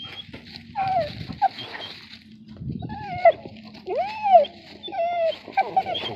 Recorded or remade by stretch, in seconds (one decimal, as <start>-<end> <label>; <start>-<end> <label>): 0.0-6.2 recorded